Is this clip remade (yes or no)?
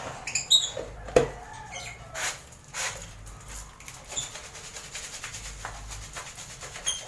no